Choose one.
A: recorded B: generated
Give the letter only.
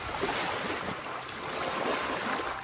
A